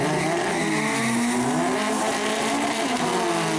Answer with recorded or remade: recorded